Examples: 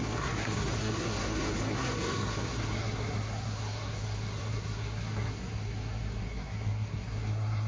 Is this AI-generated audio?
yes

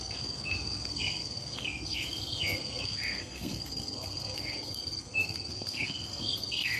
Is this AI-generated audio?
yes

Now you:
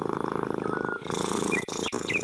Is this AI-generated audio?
no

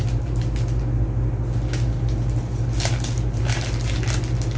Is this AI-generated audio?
no